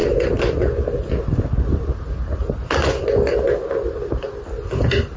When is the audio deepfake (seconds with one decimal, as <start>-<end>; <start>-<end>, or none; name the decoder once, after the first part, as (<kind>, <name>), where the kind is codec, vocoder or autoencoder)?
none